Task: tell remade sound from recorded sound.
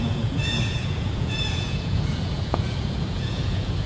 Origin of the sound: remade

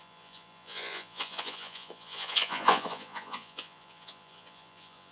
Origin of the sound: remade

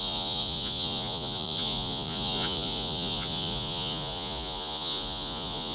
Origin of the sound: remade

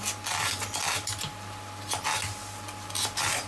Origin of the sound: recorded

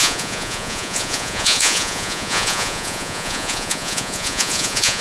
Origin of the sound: remade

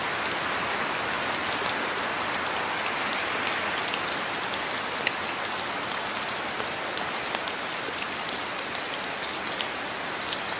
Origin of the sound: recorded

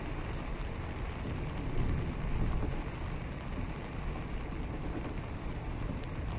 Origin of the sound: recorded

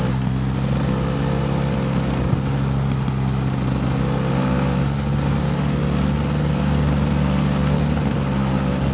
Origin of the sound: recorded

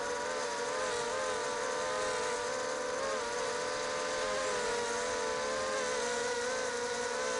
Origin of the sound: recorded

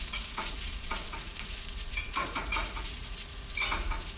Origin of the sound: remade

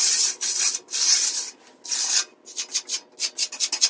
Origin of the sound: recorded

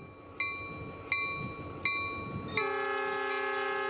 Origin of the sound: recorded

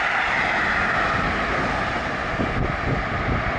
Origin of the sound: recorded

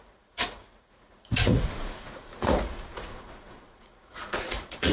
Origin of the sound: remade